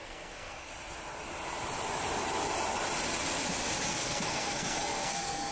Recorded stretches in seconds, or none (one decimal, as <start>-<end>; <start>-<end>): 0.7-3.9